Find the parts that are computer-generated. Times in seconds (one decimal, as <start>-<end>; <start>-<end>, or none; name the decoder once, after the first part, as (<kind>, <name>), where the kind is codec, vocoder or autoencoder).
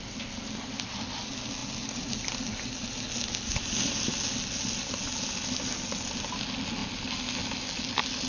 none